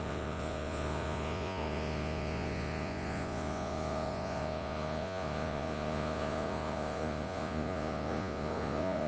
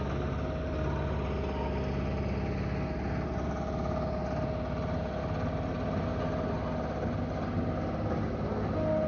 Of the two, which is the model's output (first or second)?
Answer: first